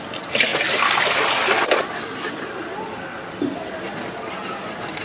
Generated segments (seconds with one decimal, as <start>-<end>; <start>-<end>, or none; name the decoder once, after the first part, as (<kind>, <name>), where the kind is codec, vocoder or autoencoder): none